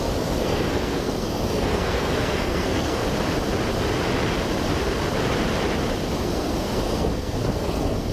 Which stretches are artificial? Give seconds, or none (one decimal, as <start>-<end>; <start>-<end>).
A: 0.0-3.0; 6.2-8.1